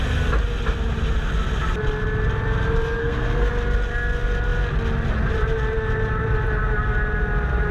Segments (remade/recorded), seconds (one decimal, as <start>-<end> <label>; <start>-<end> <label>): 0.0-3.0 recorded; 3.0-3.5 remade; 3.5-7.7 recorded